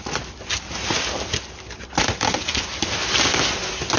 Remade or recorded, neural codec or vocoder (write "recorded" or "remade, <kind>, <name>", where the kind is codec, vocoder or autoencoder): recorded